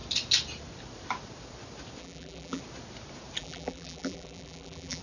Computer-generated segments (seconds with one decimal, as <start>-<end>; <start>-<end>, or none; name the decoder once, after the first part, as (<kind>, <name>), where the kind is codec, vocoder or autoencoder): 2.0-2.6 (vocoder, BigVGAN v2); 3.4-5.0